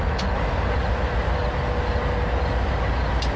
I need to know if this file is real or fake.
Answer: real